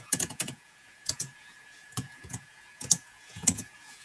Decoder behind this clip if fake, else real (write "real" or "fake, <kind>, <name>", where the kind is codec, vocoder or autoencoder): fake, vocoder, Vocos